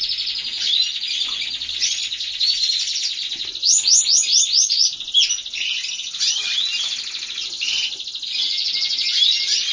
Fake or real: real